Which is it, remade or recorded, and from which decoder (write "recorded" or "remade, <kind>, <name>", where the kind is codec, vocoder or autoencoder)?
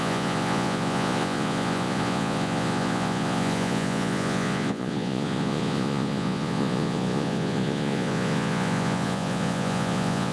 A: remade, vocoder, Vocos